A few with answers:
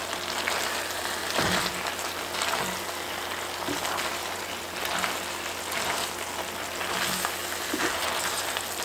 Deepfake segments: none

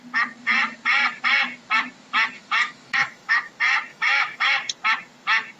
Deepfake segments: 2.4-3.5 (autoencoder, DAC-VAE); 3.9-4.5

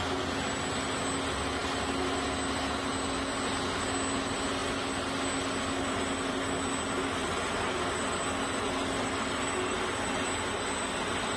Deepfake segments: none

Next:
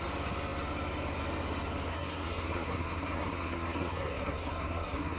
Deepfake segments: 1.9-5.2 (codec, SNAC)

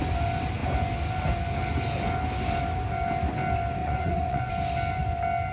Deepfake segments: 3.8-4.5 (vocoder, Vocos)

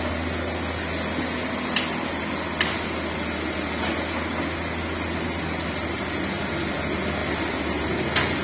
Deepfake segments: none

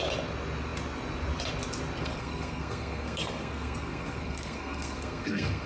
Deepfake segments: 2.0-5.7 (codec, SNAC)

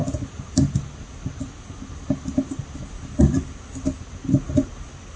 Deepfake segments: none